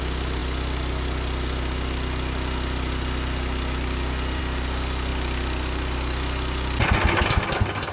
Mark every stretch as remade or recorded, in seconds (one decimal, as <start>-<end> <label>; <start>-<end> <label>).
0.0-7.9 recorded

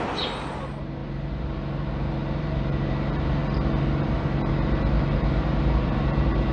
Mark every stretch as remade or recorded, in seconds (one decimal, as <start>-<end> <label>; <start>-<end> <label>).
0.0-3.4 remade; 3.4-4.5 recorded; 4.5-6.5 remade

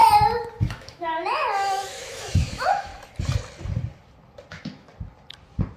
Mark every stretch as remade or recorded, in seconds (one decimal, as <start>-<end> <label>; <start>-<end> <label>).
0.0-0.6 recorded; 0.6-2.9 remade; 2.9-4.5 recorded; 4.5-4.9 remade; 4.9-5.8 recorded